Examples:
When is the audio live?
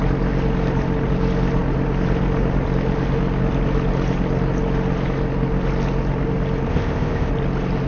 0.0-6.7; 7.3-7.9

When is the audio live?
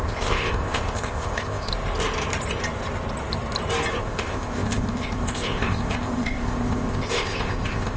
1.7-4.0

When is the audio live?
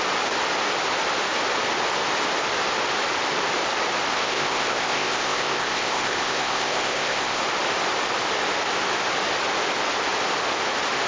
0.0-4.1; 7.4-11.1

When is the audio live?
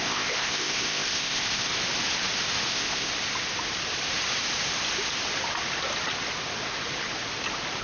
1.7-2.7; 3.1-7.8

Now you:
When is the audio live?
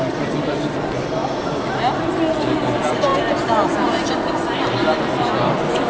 0.0-5.9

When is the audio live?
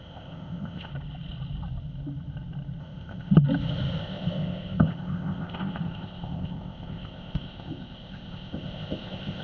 0.9-2.8; 3.3-4.0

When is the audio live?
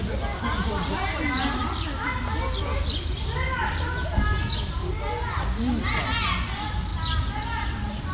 0.0-8.1